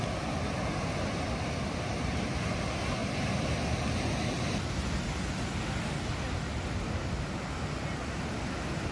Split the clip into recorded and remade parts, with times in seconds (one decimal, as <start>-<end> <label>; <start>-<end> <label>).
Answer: 0.0-8.9 recorded